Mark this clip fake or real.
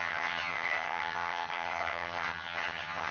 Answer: fake